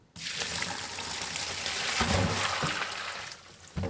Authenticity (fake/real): real